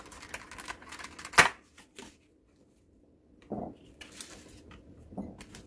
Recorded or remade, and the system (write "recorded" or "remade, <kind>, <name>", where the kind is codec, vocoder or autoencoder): recorded